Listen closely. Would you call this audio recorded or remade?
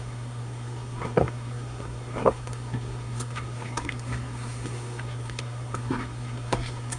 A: remade